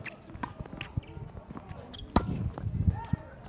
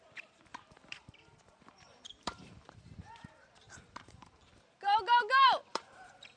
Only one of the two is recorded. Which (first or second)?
first